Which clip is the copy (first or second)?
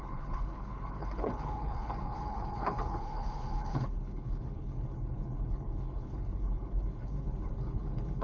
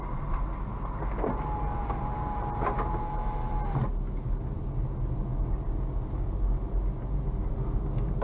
first